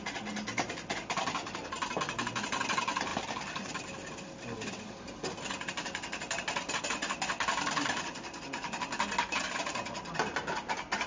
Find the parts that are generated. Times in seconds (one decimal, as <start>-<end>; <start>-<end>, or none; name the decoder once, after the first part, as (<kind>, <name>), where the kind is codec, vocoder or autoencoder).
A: none